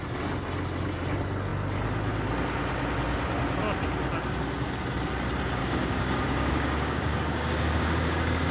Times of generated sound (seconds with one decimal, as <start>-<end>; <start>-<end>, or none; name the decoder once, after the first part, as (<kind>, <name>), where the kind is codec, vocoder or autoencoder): 5.6-8.5 (codec, DAC)